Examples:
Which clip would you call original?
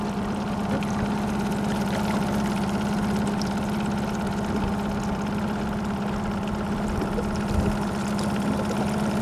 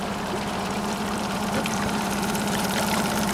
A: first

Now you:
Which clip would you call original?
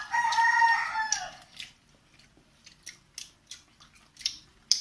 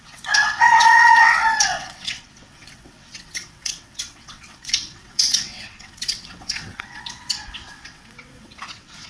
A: first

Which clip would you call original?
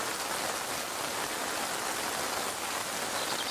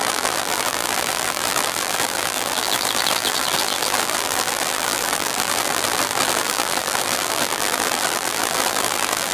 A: first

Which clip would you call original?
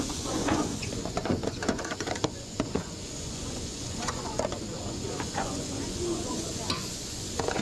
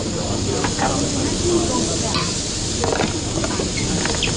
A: second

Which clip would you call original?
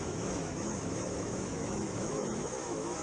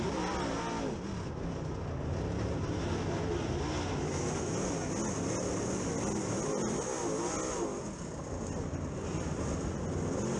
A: second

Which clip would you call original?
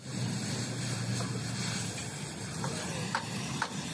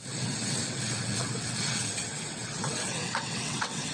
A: first